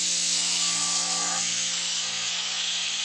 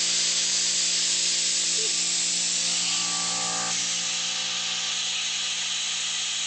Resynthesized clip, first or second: first